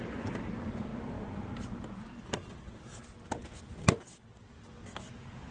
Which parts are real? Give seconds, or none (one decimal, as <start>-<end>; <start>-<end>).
0.0-5.5